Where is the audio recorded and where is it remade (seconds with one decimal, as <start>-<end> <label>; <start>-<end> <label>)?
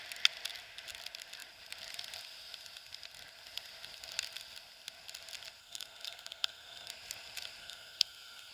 0.0-5.6 recorded; 5.6-6.9 remade; 6.9-7.6 recorded; 7.6-8.5 remade